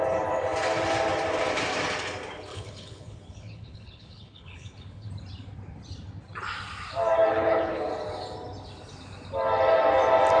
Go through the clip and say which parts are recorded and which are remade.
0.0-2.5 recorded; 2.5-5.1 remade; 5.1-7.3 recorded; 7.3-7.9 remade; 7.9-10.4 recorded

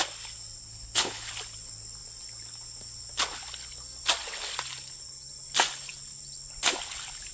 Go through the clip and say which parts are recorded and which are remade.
0.0-0.6 recorded; 0.6-1.3 remade; 1.3-7.3 recorded

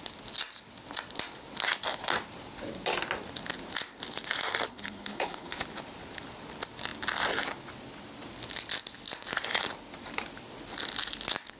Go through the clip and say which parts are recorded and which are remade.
0.0-4.7 recorded; 4.7-5.6 remade; 5.6-11.6 recorded

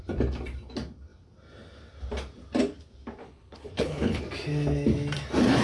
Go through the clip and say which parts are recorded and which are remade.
0.0-3.2 recorded; 3.2-4.2 remade; 4.2-5.6 recorded

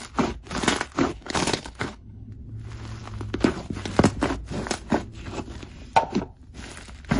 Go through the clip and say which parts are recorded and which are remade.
0.0-1.1 recorded; 1.1-2.3 remade; 2.3-7.2 recorded

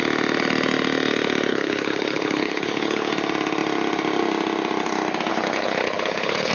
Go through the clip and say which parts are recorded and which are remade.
0.0-1.5 recorded; 1.5-3.1 remade; 3.1-5.3 recorded; 5.3-6.5 remade

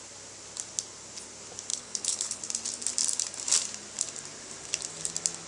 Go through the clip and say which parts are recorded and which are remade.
0.0-1.7 recorded; 1.7-2.4 remade; 2.4-5.5 recorded

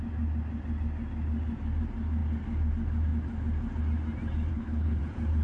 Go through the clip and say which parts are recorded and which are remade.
0.0-4.5 recorded; 4.5-5.0 remade; 5.0-5.4 recorded